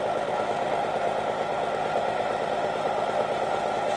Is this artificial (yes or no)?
no